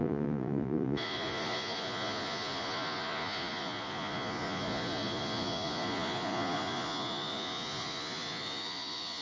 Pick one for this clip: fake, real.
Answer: fake